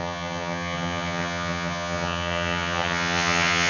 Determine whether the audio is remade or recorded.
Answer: remade